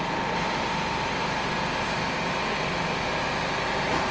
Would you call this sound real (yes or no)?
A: no